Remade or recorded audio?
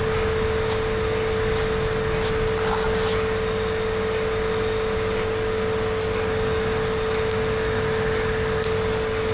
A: recorded